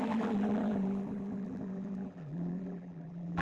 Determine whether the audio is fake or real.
fake